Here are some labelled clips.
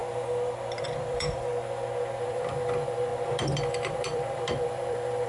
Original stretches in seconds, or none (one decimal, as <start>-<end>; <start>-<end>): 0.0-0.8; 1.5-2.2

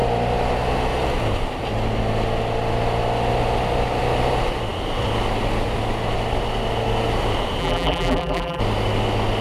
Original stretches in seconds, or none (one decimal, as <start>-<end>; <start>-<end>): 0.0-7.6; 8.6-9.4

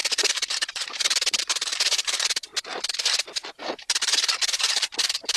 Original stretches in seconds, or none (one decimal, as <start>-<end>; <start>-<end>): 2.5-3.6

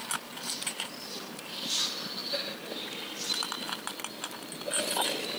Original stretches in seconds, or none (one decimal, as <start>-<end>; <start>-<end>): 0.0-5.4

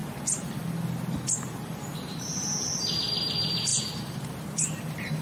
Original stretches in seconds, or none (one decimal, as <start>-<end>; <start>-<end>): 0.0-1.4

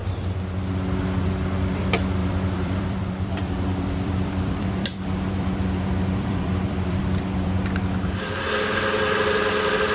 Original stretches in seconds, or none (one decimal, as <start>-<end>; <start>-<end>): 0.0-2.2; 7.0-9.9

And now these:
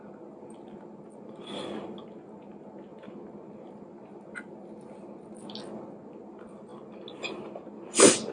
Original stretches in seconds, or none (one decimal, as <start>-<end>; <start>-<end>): 0.0-8.3

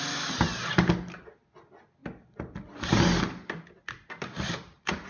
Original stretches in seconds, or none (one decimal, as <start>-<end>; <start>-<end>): 0.0-5.1